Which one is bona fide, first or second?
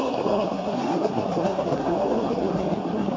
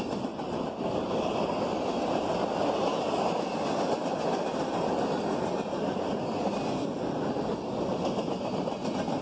second